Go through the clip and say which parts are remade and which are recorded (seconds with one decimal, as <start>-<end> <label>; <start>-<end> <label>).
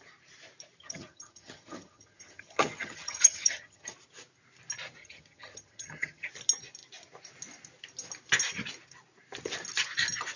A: 0.0-0.8 recorded; 0.8-3.9 remade; 3.9-5.0 recorded; 5.0-6.3 remade; 6.3-10.4 recorded